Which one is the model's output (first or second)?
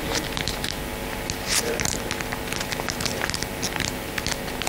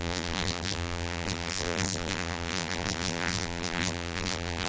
second